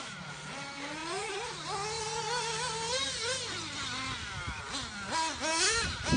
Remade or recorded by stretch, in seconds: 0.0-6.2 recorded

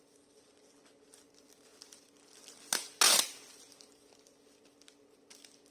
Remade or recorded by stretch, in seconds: 0.0-5.7 recorded

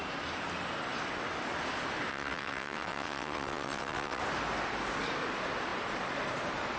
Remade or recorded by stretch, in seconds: 0.0-2.1 recorded; 2.1-4.2 remade; 4.2-6.8 recorded

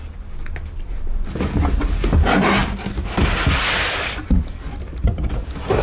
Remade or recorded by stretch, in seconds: 0.0-5.8 recorded

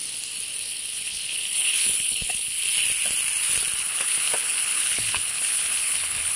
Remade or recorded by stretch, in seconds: 0.0-0.6 recorded; 0.6-2.6 remade; 2.6-3.8 recorded; 3.8-6.4 remade

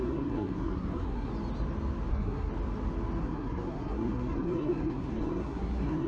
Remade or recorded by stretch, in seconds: 0.0-1.3 remade; 1.3-2.1 recorded; 2.1-2.5 remade; 2.5-3.2 recorded; 3.2-6.1 remade